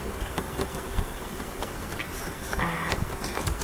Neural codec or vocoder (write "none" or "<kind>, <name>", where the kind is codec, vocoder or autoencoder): codec, SNAC